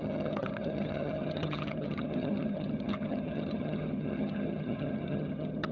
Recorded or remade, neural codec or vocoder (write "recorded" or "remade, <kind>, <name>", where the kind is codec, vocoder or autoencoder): remade, vocoder, HiFi-GAN